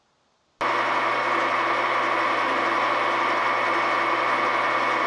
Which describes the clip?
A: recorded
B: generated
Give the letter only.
A